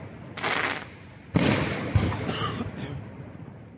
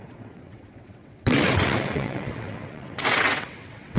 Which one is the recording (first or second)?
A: first